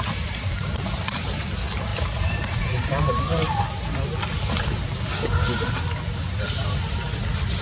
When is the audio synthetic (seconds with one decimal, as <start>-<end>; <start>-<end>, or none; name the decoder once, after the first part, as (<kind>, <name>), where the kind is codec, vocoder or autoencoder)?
none